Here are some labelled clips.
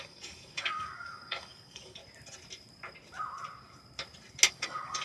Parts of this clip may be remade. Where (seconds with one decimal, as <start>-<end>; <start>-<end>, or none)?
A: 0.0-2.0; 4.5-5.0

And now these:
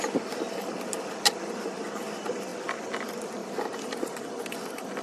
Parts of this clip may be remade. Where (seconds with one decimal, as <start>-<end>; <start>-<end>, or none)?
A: none

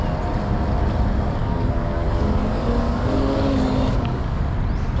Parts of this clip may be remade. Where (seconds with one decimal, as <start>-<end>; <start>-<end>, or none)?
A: 1.4-4.4

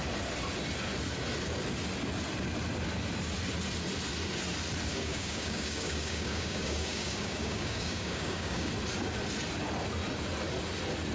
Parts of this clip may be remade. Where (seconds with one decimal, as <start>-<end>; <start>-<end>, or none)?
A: 4.9-8.7

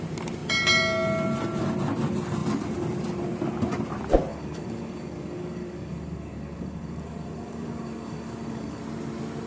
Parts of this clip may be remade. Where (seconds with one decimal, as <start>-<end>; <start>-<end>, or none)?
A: 4.3-8.8

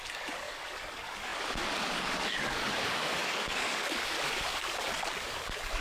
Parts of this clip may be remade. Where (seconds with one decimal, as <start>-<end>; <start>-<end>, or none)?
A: 0.0-5.8